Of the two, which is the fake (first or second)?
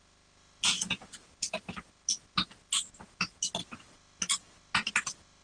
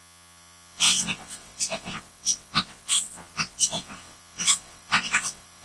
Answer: second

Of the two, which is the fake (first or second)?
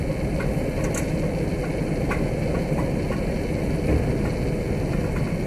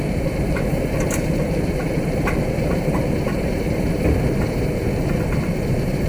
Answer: second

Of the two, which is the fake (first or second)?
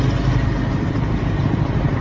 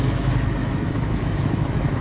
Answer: second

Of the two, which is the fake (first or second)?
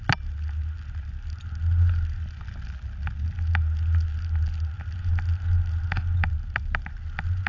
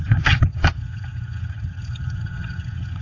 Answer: second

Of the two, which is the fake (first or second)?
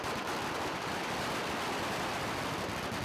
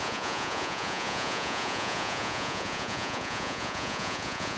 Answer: second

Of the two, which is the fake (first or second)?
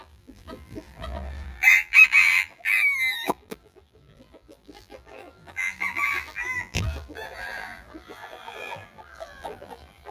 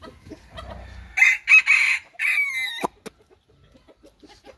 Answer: first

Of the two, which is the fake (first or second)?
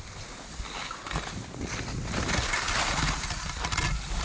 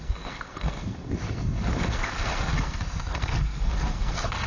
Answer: second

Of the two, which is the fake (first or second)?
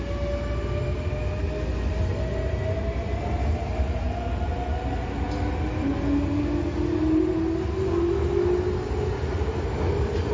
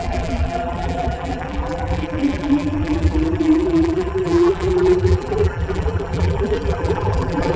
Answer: second